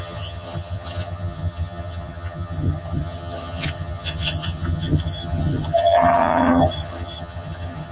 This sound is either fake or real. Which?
fake